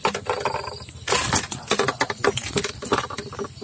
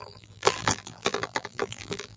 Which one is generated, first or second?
second